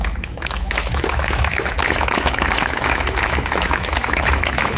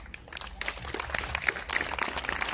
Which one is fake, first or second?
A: first